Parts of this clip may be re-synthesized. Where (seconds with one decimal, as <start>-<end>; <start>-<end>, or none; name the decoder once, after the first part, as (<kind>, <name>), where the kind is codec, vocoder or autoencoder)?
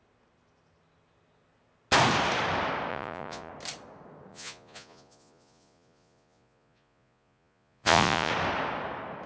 2.9-3.5 (vocoder, Vocos); 4.3-8.3